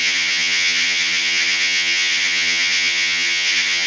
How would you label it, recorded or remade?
remade